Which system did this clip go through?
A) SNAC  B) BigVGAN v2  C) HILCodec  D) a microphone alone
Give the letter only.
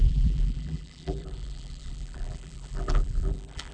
B